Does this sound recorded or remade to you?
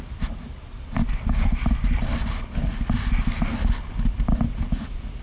recorded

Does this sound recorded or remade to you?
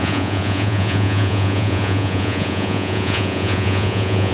remade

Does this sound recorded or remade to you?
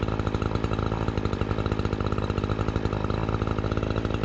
recorded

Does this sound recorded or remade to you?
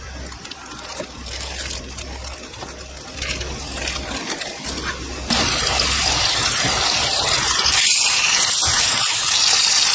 recorded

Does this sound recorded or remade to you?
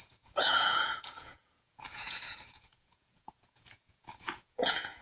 remade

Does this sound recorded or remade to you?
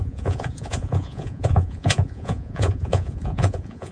remade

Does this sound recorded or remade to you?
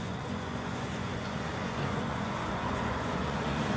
remade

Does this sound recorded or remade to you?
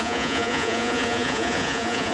remade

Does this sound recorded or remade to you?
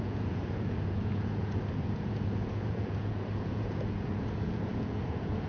remade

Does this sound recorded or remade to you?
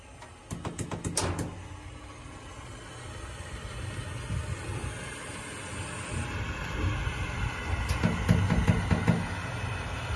recorded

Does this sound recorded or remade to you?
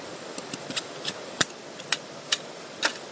recorded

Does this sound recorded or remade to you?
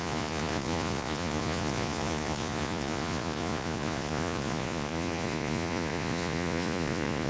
remade